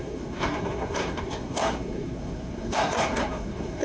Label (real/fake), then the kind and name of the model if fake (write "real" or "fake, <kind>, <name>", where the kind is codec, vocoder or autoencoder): fake, codec, SNAC